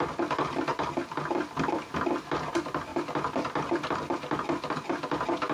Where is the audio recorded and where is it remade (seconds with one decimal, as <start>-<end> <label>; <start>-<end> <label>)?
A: 0.0-5.5 recorded